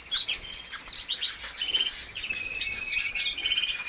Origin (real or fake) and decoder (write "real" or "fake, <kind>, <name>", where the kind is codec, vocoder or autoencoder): fake, vocoder, BigVGAN v2